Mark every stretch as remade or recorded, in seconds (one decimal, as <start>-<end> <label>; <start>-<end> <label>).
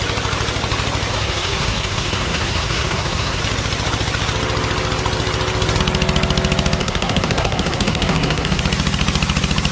0.0-1.1 recorded; 1.1-3.4 remade; 3.4-6.8 recorded; 6.8-8.6 remade; 8.6-9.7 recorded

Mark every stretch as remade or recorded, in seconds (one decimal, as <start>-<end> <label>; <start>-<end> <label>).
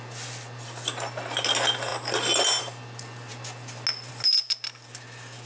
0.0-5.5 recorded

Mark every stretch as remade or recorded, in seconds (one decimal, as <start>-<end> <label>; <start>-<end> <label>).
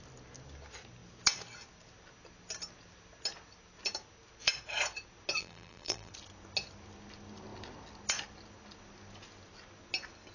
0.0-5.4 recorded; 5.4-6.1 remade; 6.1-10.3 recorded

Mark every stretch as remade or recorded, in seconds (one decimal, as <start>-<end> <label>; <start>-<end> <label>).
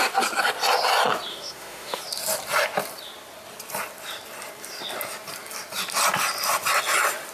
0.0-1.3 recorded; 1.3-2.0 remade; 2.0-7.3 recorded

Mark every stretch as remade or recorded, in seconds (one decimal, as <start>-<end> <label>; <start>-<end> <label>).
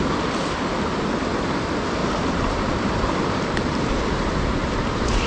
0.0-2.0 recorded; 2.0-5.3 remade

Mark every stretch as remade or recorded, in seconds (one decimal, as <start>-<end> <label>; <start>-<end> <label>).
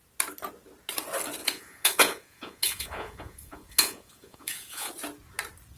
0.0-1.4 recorded; 1.4-4.9 remade; 4.9-5.8 recorded